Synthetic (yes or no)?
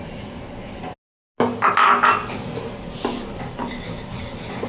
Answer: no